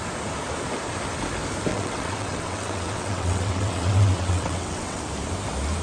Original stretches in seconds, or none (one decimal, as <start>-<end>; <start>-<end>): 0.0-1.7; 5.0-5.8